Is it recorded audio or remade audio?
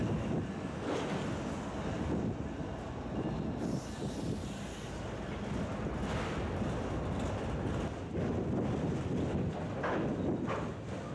recorded